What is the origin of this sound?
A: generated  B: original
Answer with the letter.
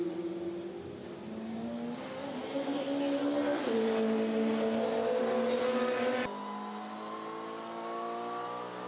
B